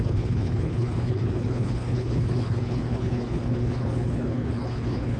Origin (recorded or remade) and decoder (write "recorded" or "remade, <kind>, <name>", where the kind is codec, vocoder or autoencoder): remade, codec, HILCodec